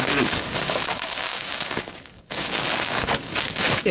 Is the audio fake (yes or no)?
yes